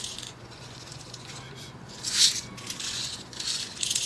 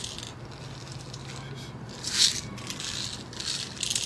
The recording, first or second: second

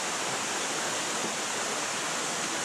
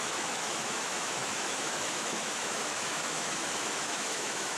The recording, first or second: first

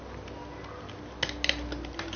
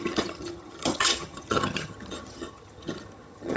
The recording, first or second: first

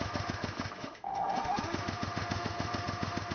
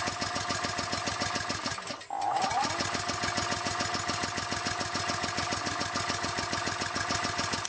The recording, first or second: second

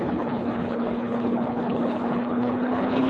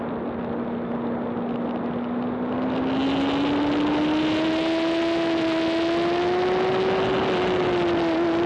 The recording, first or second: second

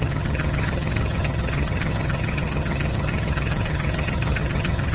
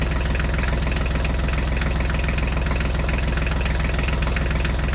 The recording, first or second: second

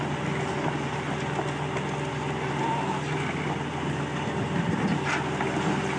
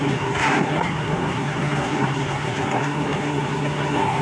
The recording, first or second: first